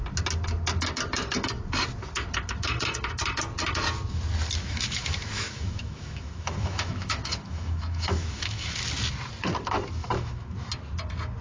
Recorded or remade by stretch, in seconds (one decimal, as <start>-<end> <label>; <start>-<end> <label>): 0.0-4.6 recorded; 4.6-8.7 remade; 8.7-10.0 recorded; 10.0-10.7 remade; 10.7-11.4 recorded